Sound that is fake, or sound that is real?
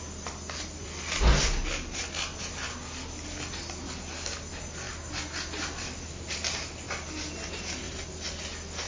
real